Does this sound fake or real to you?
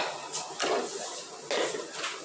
real